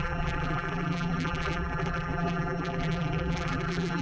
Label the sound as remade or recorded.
remade